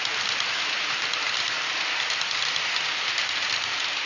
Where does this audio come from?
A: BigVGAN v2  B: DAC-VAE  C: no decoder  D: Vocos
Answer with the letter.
C